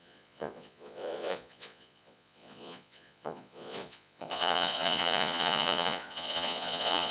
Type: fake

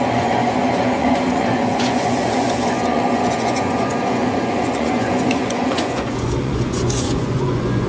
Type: fake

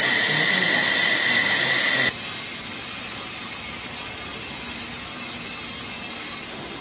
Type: real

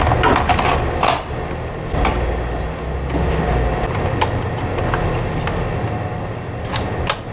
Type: real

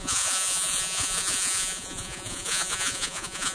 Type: fake